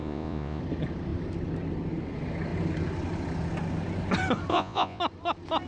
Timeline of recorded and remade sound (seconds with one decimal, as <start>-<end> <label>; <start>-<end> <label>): 0.0-0.6 remade; 0.6-4.5 recorded; 4.5-5.0 remade; 5.0-5.7 recorded